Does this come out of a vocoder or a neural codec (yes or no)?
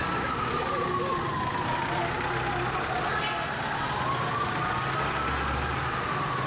no